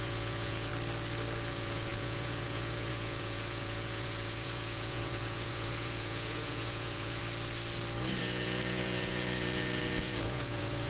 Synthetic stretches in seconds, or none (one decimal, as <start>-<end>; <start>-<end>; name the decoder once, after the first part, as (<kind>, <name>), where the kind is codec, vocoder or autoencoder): 0.0-0.7 (vocoder, Vocos); 1.5-7.2; 8.2-10.9